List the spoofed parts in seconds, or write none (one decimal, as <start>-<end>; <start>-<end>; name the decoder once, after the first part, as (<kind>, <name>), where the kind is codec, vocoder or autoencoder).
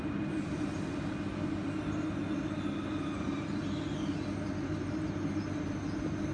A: none